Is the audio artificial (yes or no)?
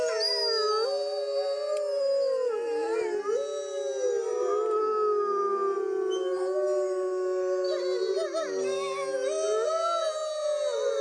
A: no